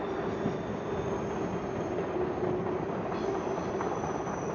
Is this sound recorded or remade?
recorded